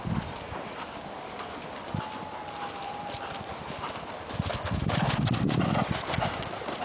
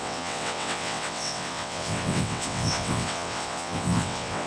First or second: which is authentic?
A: first